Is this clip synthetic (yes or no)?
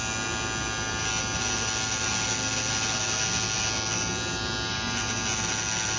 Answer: no